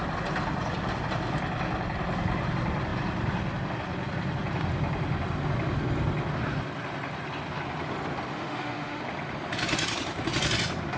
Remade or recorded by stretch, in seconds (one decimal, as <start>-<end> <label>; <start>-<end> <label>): 0.0-8.3 recorded; 8.3-9.0 remade; 9.0-11.0 recorded